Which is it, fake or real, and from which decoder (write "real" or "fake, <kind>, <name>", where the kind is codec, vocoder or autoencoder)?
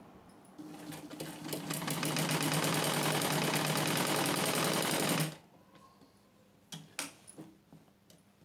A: real